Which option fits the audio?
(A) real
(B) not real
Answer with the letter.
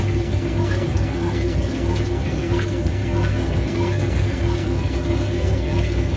B